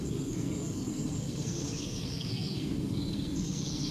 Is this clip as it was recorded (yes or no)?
no